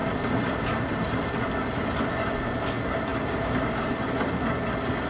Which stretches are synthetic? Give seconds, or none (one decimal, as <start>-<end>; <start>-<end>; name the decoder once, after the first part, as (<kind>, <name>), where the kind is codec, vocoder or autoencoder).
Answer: 0.0-1.5 (vocoder, BigVGAN v2); 3.1-3.9